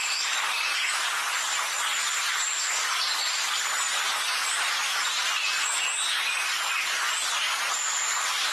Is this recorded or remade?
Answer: recorded